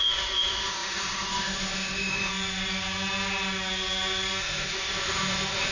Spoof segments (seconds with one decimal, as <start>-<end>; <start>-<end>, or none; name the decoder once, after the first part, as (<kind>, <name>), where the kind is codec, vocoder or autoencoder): 0.0-2.3 (autoencoder, DAC-VAE); 4.4-5.7